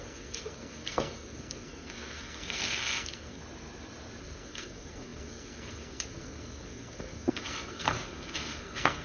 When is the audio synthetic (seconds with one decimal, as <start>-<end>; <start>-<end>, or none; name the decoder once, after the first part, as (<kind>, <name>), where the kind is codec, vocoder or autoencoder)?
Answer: 0.0-3.4 (codec, SNAC); 4.2-9.0

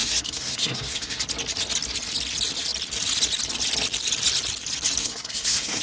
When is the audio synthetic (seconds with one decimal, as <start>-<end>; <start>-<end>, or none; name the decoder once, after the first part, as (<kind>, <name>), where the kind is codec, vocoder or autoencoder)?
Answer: 0.0-1.2 (codec, SNAC); 5.0-5.8

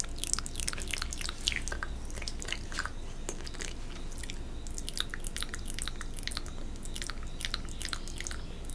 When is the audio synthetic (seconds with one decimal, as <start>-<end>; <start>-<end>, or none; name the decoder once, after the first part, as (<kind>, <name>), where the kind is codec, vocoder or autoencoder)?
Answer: none

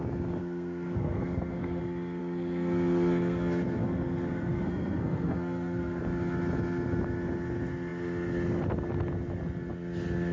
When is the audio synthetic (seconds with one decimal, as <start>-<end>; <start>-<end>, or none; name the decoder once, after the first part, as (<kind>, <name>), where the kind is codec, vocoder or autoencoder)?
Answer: 0.4-1.8 (codec, SNAC); 2.2-6.0

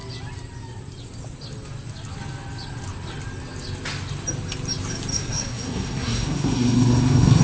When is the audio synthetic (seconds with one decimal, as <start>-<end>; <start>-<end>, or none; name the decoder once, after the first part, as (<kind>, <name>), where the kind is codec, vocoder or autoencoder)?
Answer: 5.1-7.4 (codec, SNAC)